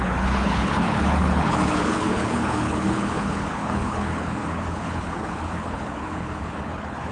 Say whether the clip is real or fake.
fake